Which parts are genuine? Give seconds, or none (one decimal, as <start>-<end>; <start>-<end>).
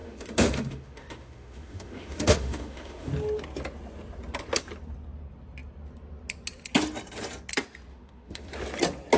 3.1-7.9; 8.5-9.2